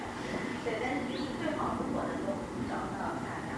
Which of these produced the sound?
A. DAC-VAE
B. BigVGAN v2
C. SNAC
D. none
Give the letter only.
B